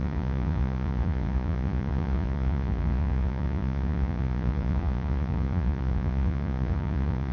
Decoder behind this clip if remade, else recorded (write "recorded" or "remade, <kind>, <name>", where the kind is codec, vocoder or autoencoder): remade, vocoder, Vocos